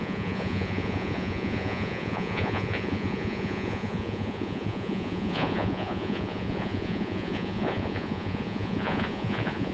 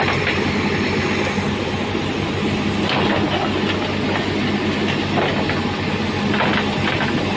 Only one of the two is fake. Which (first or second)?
first